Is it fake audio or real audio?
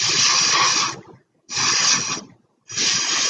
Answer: real